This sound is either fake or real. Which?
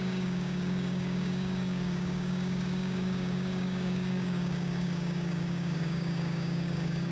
fake